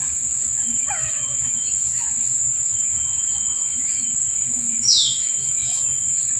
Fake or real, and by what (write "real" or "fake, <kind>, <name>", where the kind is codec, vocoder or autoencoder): fake, autoencoder, DAC-VAE